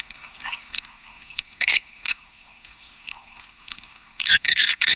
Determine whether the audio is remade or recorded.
remade